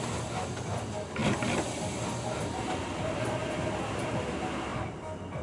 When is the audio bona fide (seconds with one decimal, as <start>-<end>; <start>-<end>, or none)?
0.0-5.4